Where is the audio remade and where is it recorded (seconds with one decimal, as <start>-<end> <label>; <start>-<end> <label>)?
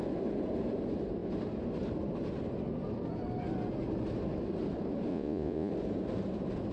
0.0-5.1 recorded; 5.1-5.7 remade; 5.7-6.7 recorded